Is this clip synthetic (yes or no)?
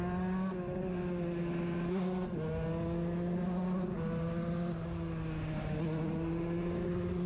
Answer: no